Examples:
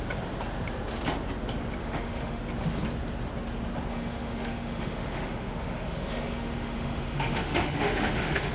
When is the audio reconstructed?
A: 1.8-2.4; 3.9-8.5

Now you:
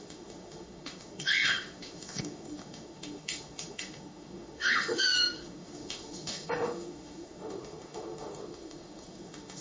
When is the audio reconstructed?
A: 0.0-9.6

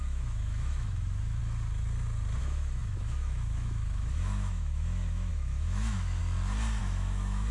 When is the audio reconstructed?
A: 0.0-1.4; 2.4-6.2; 6.8-7.5

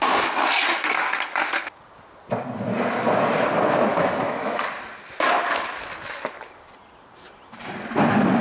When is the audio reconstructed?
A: 3.9-4.6

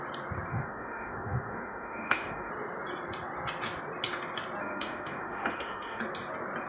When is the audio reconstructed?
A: 0.5-2.5; 4.6-6.0

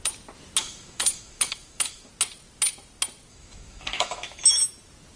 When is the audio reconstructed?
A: 0.6-2.1; 3.3-4.6

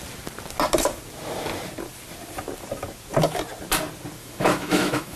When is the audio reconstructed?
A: 4.2-5.2